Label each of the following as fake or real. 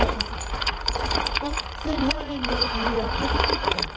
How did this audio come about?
fake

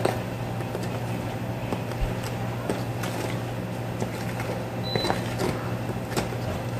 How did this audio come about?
real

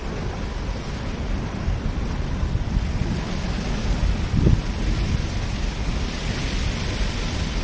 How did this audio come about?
real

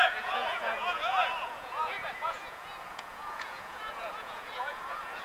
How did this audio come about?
fake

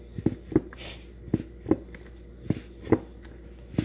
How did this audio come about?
real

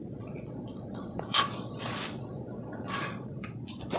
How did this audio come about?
fake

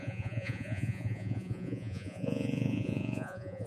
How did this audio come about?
fake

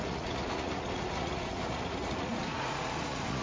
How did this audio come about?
fake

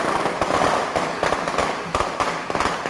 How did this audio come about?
real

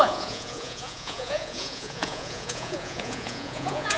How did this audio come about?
fake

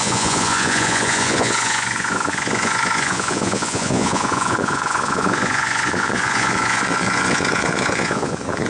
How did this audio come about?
fake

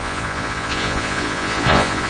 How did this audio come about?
fake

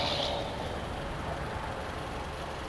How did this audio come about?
real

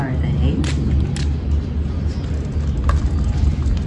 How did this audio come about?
real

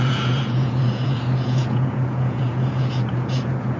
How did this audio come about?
fake